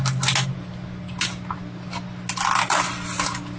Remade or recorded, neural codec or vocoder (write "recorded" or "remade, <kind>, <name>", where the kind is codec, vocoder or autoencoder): recorded